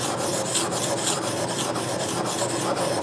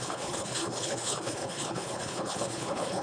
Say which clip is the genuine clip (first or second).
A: first